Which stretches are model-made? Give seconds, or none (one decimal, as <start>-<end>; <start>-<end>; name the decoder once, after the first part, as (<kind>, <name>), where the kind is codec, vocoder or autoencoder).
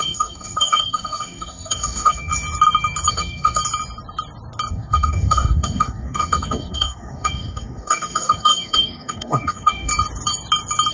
0.0-2.3 (codec, DAC); 3.1-3.6; 4.7-9.9